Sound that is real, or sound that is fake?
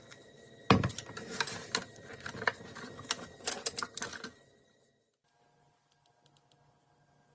real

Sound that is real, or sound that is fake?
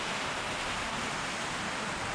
real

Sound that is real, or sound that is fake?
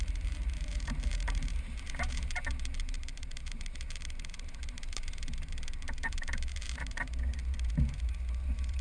fake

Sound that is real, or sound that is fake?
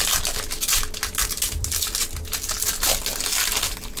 real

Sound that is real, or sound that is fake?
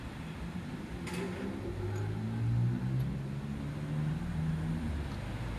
real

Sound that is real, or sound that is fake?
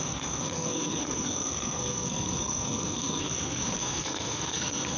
fake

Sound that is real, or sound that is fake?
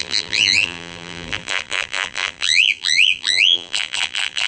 fake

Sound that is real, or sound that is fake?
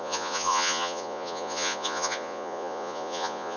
fake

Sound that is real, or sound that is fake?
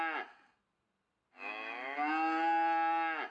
real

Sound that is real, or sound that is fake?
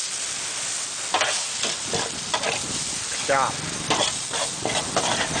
real